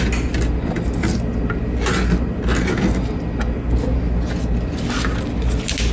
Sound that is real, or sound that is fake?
real